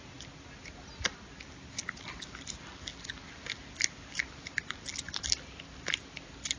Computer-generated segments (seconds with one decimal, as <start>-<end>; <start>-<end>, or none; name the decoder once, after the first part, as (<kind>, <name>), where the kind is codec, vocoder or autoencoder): none